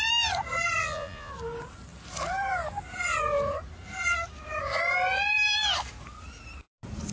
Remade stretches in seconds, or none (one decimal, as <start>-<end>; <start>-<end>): 0.8-1.3